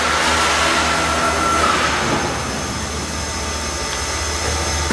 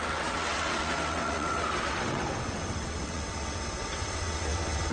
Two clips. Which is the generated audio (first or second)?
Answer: second